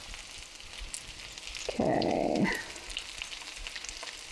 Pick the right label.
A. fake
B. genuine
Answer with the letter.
B